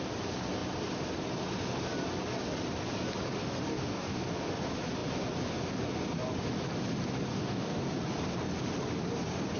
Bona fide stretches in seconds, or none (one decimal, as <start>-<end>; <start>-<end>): 0.0-3.7; 4.3-7.3; 7.8-9.6